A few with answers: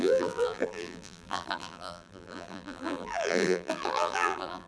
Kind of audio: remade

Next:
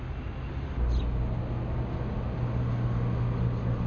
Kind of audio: recorded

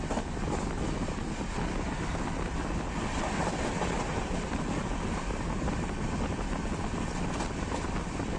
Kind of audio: recorded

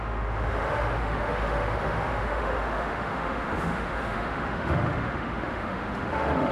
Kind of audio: remade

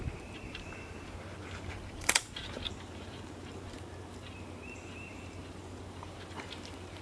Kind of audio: remade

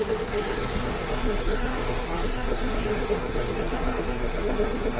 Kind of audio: remade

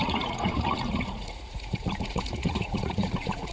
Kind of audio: remade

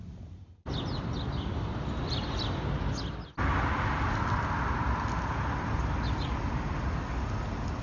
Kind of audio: recorded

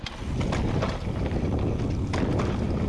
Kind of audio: recorded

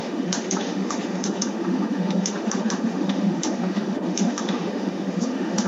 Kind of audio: remade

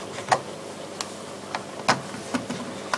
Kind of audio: recorded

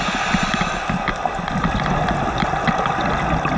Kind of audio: recorded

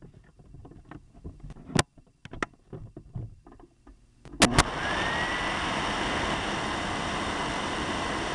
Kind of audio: recorded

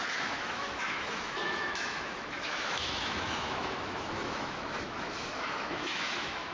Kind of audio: remade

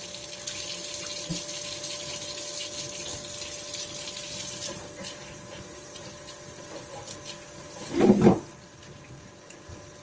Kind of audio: recorded